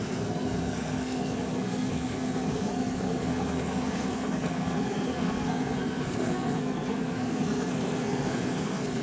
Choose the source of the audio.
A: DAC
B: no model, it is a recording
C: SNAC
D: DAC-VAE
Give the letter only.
C